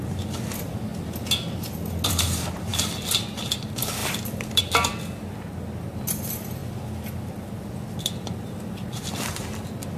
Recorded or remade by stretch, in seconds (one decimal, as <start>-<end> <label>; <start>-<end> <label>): 0.0-4.0 recorded; 4.0-4.6 remade; 4.6-6.6 recorded; 6.6-7.7 remade; 7.7-10.0 recorded